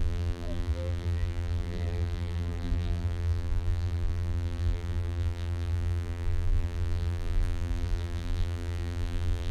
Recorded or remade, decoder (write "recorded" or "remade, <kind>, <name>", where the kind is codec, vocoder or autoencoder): remade, vocoder, BigVGAN v2